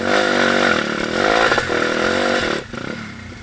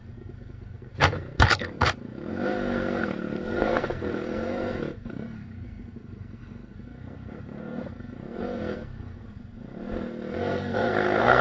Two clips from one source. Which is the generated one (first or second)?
second